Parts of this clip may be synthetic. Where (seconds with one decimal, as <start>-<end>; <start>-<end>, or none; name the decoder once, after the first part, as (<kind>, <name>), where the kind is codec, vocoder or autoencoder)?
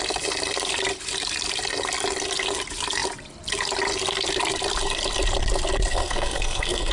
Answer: 5.9-6.9 (codec, SNAC)